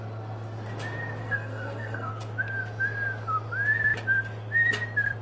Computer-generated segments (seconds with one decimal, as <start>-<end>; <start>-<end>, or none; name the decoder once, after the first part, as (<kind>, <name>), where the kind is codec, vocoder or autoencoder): 1.2-2.1 (codec, SNAC)